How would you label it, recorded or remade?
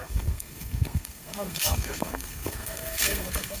remade